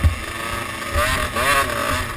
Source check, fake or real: real